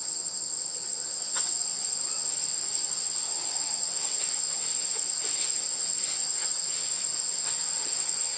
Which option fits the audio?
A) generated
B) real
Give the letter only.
A